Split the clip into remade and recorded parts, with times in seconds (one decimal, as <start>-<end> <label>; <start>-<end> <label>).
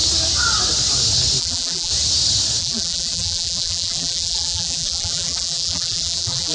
0.0-1.4 recorded; 1.4-1.9 remade; 1.9-2.6 recorded; 2.6-6.5 remade